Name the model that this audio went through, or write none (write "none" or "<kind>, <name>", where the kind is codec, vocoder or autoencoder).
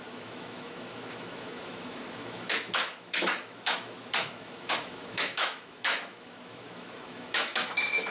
autoencoder, DAC-VAE